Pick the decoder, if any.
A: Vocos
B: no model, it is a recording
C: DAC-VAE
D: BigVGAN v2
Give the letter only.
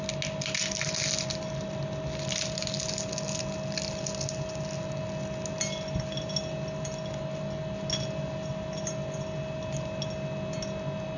B